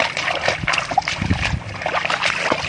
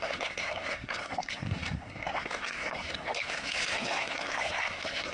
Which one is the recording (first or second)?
first